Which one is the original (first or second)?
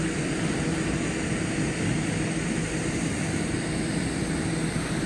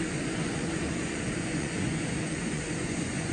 first